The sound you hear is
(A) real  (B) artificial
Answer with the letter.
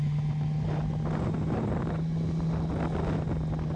A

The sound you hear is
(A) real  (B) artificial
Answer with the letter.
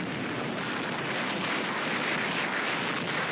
A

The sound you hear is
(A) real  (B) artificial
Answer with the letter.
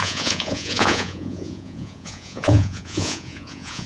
B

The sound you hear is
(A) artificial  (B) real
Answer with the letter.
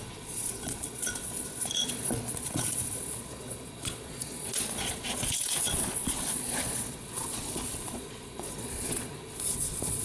A